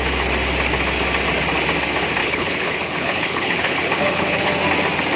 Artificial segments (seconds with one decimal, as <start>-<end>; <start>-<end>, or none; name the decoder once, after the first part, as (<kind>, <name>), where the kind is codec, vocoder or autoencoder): 2.2-4.5 (codec, HILCodec)